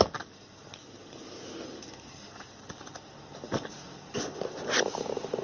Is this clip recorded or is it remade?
recorded